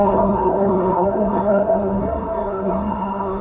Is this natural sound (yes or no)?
no